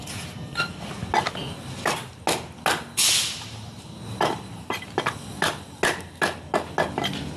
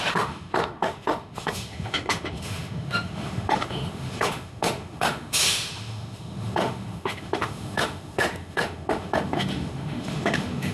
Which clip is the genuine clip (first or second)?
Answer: first